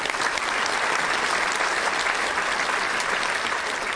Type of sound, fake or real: real